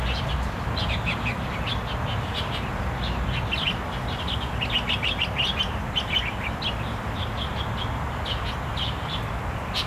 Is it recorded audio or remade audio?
recorded